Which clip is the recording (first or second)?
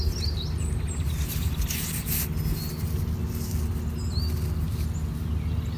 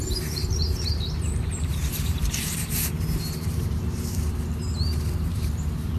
first